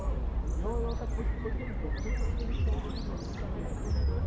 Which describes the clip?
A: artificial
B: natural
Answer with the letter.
B